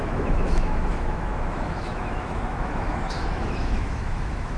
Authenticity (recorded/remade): remade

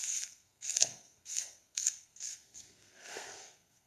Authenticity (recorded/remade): remade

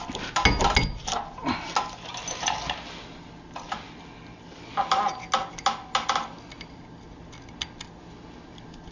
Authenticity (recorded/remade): recorded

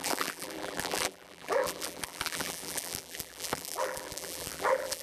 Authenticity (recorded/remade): remade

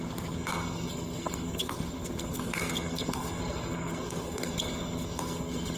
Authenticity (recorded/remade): remade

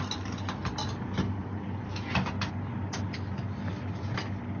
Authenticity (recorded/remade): recorded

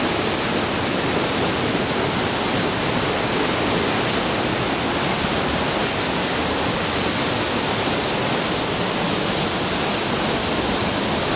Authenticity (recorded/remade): recorded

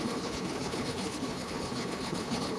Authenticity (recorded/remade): remade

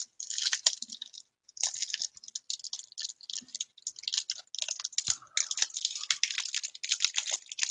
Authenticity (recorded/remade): recorded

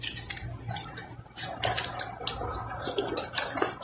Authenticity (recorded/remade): recorded